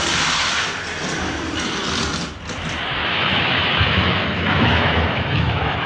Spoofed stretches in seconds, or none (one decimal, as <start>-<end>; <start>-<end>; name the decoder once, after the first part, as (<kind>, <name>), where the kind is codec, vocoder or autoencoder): 3.0-5.9 (autoencoder, DAC-VAE)